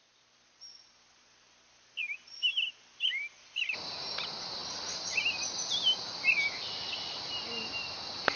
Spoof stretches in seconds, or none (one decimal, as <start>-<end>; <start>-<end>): none